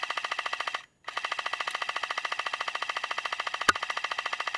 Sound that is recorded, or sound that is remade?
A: recorded